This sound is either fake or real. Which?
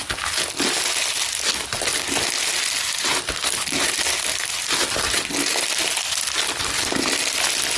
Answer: real